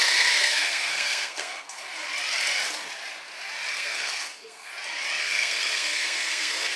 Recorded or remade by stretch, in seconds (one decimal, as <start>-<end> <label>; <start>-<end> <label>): 0.0-2.1 remade; 2.1-3.7 recorded; 3.7-4.7 remade; 4.7-5.2 recorded; 5.2-6.8 remade